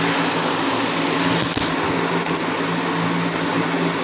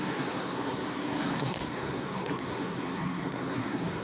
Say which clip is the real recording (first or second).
first